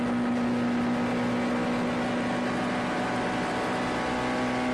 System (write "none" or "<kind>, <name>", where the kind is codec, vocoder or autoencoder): none